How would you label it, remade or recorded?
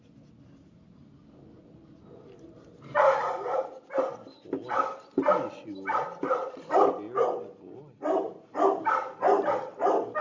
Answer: recorded